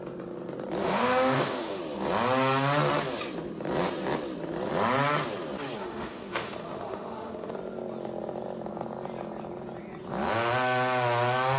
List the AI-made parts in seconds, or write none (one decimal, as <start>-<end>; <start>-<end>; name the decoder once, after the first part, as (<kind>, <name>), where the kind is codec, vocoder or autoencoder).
0.8-1.8 (autoencoder, DAC-VAE); 5.8-7.5